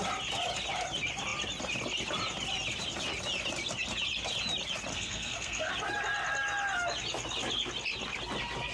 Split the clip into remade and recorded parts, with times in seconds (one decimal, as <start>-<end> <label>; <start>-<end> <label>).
0.0-4.9 recorded; 4.9-5.7 remade; 5.7-8.7 recorded